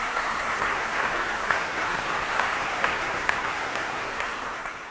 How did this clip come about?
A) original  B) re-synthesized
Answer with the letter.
B